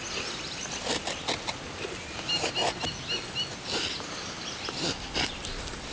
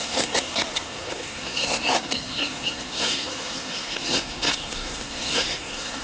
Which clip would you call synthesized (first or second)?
second